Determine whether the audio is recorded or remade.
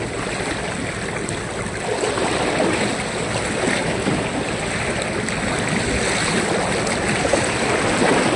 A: recorded